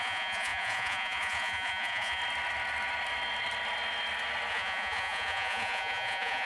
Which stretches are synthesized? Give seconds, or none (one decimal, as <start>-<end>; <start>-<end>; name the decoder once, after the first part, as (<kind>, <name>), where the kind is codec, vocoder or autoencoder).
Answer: 0.0-2.2 (vocoder, Vocos); 4.5-6.5